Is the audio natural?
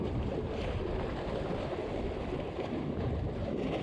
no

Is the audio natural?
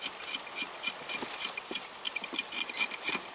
yes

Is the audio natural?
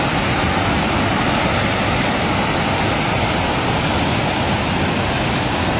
yes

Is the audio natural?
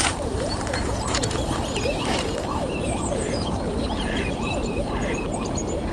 no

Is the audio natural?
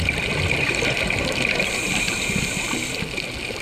no